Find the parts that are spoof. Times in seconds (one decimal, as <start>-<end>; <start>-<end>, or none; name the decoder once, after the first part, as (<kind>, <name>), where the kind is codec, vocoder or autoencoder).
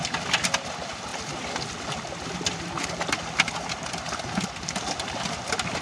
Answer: none